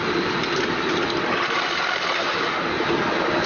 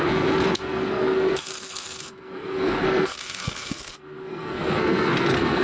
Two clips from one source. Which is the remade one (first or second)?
second